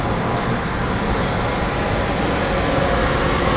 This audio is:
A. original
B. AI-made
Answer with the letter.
A